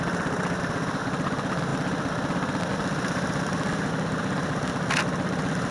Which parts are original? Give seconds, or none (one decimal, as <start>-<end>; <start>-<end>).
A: 0.0-5.7